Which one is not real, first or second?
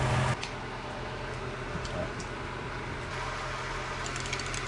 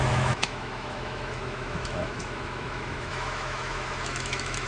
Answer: second